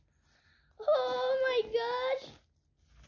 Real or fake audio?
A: real